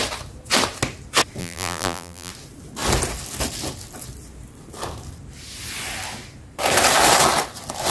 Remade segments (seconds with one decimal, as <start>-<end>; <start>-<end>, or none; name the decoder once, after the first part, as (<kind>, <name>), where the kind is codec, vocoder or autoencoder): 1.4-2.3 (vocoder, BigVGAN v2)